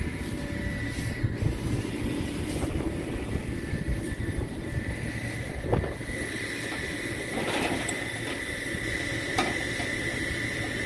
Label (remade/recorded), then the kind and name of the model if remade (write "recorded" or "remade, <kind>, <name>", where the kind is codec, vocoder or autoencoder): remade, vocoder, BigVGAN v2